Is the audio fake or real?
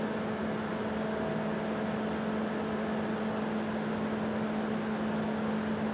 real